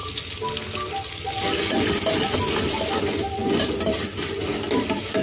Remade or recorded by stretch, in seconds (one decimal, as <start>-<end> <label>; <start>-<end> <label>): 0.0-5.2 recorded